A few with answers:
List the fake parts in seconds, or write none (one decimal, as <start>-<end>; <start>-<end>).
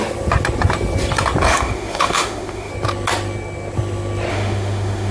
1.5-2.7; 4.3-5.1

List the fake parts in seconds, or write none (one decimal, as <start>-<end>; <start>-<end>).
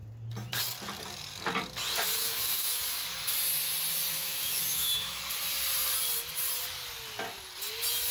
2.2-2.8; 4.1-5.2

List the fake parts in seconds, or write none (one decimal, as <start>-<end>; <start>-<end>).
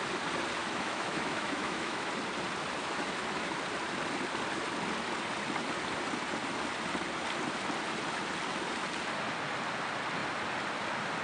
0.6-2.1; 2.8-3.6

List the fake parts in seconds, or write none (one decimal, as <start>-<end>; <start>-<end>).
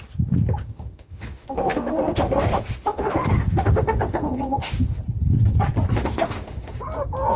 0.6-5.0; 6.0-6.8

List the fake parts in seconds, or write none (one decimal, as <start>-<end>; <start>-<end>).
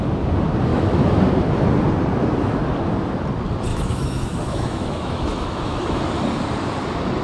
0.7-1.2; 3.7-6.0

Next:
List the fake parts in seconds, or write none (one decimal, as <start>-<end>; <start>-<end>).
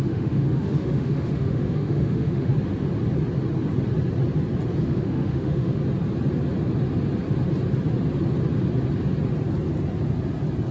0.0-2.5; 4.8-5.8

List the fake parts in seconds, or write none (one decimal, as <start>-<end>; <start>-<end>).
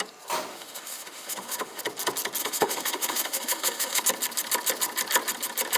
0.5-1.8; 2.4-4.0